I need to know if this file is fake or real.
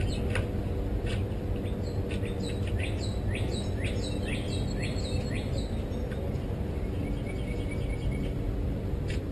real